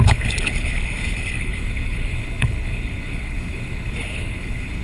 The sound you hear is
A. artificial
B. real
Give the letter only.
A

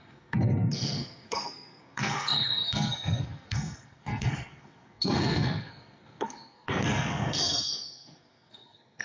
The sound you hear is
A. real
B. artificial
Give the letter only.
B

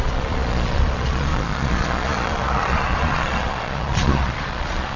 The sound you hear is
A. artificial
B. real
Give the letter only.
A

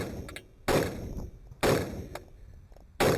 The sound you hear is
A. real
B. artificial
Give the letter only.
A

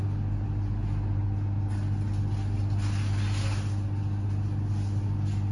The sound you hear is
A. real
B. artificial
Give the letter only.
A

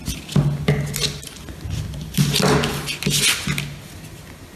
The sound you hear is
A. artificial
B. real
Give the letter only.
B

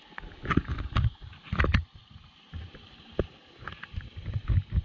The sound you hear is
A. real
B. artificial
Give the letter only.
B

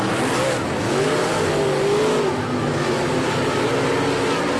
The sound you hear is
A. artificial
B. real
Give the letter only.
B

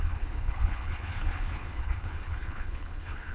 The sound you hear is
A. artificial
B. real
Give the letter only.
A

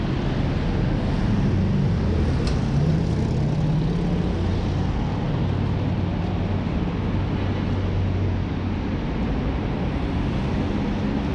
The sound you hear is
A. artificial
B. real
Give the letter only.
B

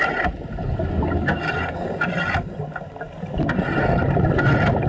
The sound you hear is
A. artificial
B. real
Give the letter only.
B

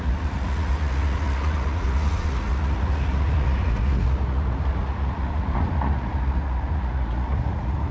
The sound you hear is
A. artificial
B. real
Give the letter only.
A